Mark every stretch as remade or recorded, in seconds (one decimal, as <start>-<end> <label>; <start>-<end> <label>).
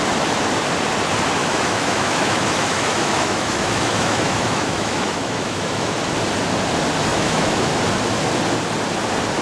0.0-1.4 recorded; 1.4-5.9 remade; 5.9-7.1 recorded; 7.1-7.7 remade; 7.7-9.4 recorded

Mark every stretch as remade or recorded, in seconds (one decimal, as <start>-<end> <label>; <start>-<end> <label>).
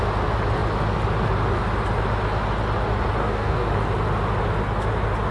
0.0-3.2 recorded; 3.2-3.7 remade; 3.7-5.3 recorded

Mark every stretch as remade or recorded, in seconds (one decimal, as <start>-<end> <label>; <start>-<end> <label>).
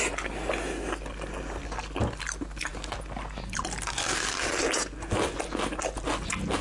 0.0-6.6 recorded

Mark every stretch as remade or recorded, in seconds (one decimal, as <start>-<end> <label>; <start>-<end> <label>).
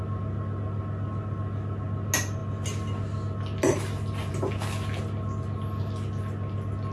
0.0-6.9 recorded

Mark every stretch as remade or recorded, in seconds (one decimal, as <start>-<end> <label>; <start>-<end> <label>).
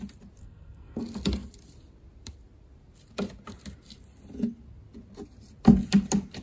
0.0-0.4 recorded; 0.4-1.0 remade; 1.0-6.4 recorded